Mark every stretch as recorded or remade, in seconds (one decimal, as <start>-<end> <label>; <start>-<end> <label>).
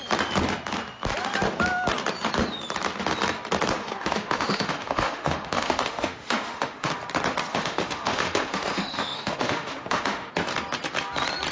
0.0-3.8 recorded; 3.8-6.9 remade; 6.9-7.5 recorded; 7.5-10.3 remade; 10.3-11.5 recorded